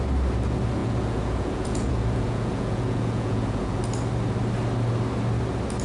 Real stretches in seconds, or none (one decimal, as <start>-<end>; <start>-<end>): 0.0-0.8; 3.8-5.8